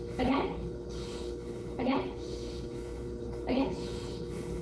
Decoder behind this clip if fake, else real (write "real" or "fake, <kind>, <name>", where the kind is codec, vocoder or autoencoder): fake, codec, HILCodec